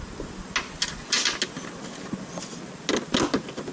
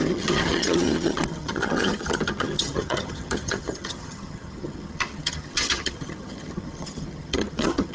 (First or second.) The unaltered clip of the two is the first